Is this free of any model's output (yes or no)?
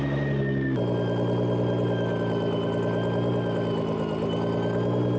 yes